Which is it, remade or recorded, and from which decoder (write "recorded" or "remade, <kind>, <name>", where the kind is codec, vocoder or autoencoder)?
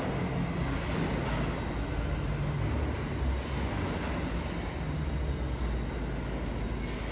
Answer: recorded